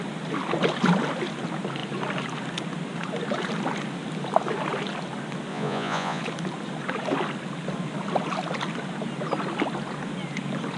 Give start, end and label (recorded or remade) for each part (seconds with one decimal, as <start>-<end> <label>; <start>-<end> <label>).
0.0-5.5 recorded; 5.5-6.2 remade; 6.2-10.8 recorded